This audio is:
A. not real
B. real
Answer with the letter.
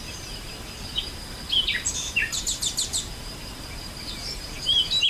A